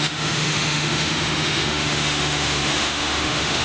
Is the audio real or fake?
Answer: fake